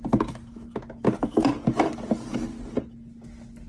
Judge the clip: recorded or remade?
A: recorded